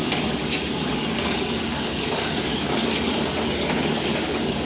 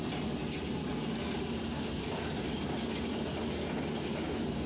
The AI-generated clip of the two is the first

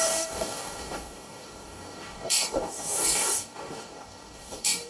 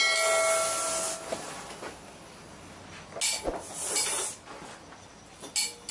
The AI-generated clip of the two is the first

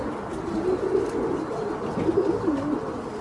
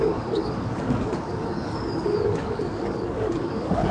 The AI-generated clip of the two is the second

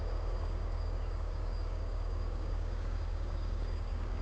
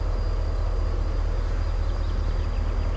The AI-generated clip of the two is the first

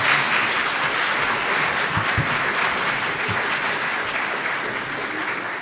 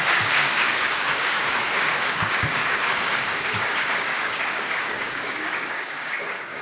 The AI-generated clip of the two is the second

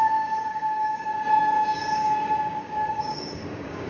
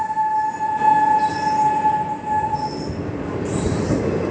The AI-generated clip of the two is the first